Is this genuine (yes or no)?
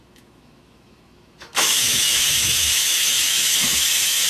no